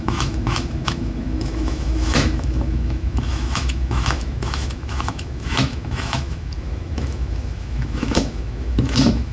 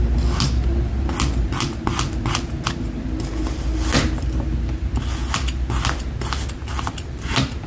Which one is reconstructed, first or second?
first